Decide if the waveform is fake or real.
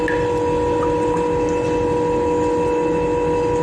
real